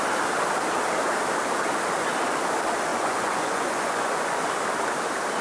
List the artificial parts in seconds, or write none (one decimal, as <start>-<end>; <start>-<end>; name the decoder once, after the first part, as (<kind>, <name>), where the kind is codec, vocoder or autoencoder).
2.9-4.5 (vocoder, Vocos)